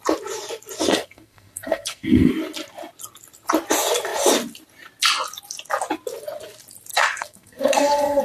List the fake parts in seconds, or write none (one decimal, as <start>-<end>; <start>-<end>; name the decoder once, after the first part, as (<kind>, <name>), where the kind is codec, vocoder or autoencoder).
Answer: 0.9-2.3 (codec, SNAC); 6.9-8.2